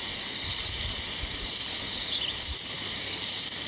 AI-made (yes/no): no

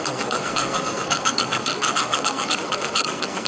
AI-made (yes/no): yes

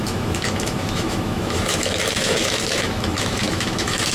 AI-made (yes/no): yes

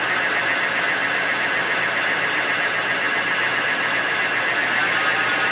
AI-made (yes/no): yes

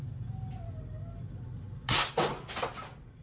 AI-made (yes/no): no